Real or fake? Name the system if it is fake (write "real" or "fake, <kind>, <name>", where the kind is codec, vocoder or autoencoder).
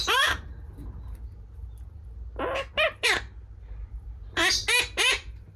real